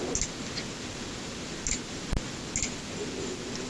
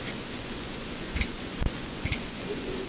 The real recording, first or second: first